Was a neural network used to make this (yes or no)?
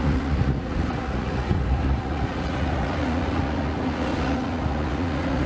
yes